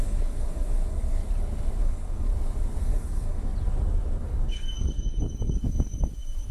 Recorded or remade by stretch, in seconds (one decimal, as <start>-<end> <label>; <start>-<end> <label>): 0.0-1.2 remade; 1.2-1.8 recorded; 1.8-2.3 remade; 2.3-2.8 recorded; 2.8-3.5 remade; 3.5-4.2 recorded; 4.2-6.5 remade